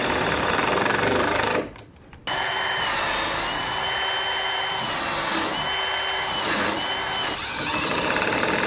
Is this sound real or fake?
real